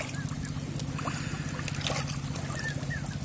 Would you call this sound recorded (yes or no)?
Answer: yes